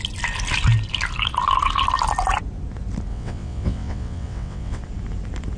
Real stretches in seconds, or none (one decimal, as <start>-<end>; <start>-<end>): 0.0-3.1; 4.8-5.6